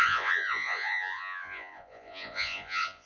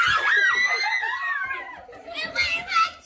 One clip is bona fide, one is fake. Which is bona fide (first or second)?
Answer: second